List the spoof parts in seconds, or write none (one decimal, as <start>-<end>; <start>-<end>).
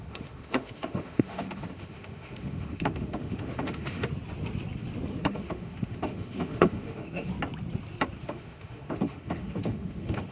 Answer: 0.0-4.1; 5.1-7.3; 8.2-10.3